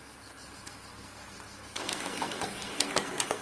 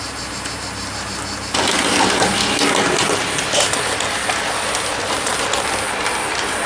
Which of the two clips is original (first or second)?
second